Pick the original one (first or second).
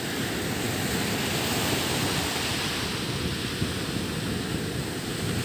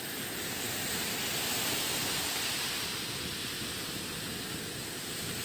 first